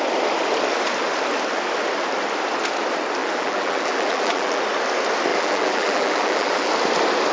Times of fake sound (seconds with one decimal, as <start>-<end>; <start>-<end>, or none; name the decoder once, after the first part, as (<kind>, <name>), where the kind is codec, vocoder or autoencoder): 3.2-4.6 (vocoder, BigVGAN v2); 5.3-6.7